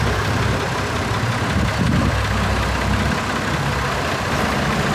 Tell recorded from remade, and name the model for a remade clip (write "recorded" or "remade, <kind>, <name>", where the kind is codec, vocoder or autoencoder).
recorded